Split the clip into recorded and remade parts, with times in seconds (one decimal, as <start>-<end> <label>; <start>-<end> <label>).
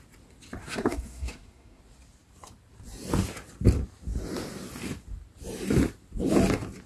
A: 0.0-0.6 recorded; 0.6-1.8 remade; 1.8-6.9 recorded